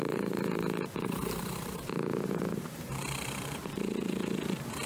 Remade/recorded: remade